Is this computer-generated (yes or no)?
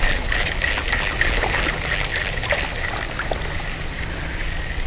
no